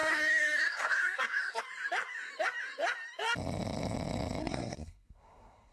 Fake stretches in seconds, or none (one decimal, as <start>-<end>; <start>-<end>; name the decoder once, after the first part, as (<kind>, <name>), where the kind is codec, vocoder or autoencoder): 0.0-1.6 (codec, SNAC); 4.4-5.7